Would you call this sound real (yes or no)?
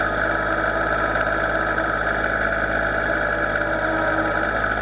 yes